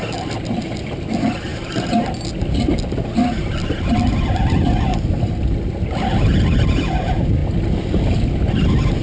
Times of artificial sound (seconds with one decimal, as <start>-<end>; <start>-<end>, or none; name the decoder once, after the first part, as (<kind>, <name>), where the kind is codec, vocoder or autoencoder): none